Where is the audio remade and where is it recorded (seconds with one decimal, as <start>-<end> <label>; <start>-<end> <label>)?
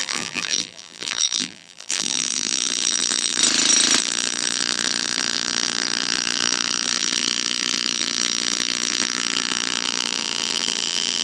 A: 0.0-3.4 remade; 3.4-4.0 recorded; 4.0-11.2 remade